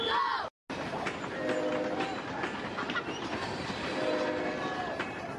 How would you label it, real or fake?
real